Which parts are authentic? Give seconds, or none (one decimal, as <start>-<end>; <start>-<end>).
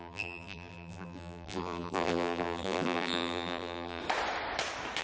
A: 4.0-5.0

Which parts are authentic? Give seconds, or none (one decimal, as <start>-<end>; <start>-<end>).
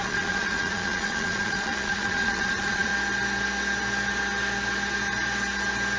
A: 2.9-6.0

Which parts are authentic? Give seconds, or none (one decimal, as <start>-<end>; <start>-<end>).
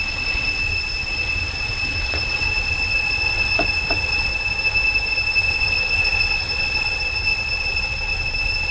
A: 4.3-5.5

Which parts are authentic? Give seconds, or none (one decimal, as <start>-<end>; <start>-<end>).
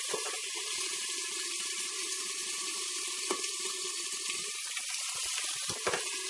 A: 0.0-6.3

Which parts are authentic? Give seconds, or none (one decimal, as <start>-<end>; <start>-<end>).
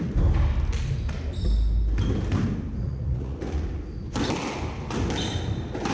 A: 0.0-2.8; 3.6-5.9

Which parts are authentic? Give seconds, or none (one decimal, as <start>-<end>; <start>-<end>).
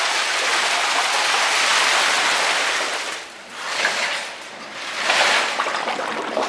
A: 0.0-6.5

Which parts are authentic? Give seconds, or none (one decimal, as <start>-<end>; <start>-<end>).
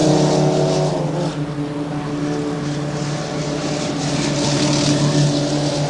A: 0.0-5.9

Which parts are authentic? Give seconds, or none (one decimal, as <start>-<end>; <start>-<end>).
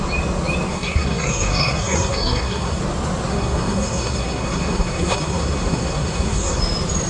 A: 0.0-0.7; 2.8-3.3; 6.6-7.1